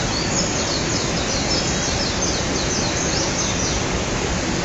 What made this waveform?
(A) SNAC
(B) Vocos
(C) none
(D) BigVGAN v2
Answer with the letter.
C